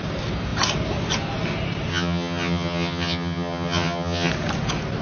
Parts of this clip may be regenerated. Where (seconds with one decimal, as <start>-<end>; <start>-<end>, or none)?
1.9-4.3